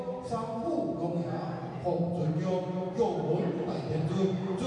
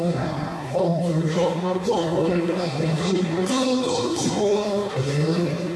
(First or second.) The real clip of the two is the first